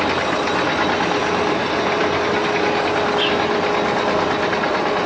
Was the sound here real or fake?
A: real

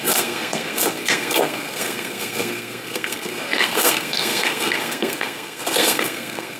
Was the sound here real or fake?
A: fake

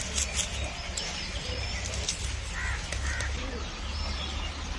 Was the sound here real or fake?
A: real